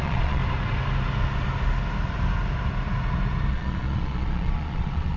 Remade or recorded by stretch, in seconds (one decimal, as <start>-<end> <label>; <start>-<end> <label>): 0.0-0.4 remade; 0.4-3.5 recorded; 3.5-5.2 remade